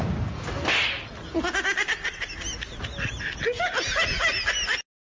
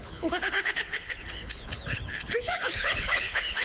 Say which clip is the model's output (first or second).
second